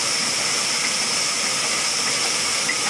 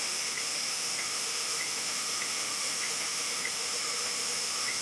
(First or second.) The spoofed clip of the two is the second